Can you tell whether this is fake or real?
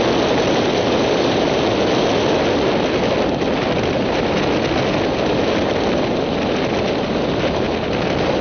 real